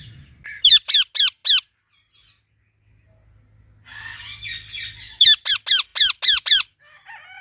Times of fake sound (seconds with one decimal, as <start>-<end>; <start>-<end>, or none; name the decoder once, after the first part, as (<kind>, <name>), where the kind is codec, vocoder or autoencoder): none